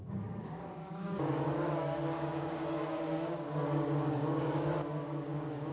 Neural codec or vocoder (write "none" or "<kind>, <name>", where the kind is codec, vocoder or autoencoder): codec, DAC